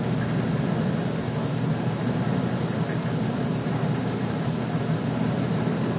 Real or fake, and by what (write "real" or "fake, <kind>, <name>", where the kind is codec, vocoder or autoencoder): real